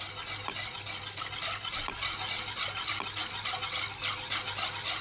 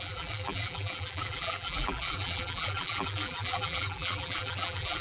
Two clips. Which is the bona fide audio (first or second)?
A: first